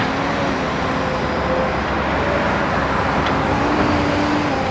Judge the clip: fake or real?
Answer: real